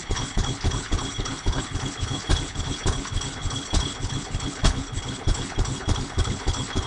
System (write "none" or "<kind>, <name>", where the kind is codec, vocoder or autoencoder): codec, HILCodec